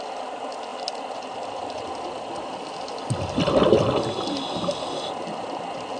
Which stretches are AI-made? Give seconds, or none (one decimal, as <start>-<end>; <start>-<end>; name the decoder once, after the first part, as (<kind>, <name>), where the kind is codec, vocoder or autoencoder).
none